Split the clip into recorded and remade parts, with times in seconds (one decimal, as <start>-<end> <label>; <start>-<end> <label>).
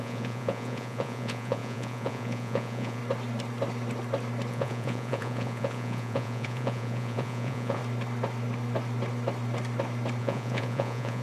0.0-3.0 remade; 3.0-4.5 recorded; 4.5-7.8 remade; 7.8-10.2 recorded; 10.2-11.2 remade